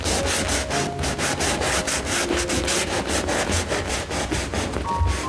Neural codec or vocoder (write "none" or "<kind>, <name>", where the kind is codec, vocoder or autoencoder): none